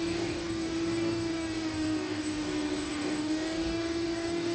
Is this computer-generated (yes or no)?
yes